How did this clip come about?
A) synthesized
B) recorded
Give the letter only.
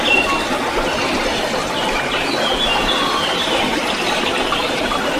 B